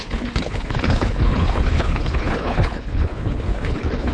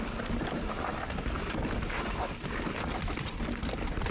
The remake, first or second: first